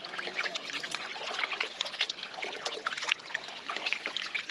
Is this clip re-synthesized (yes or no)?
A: yes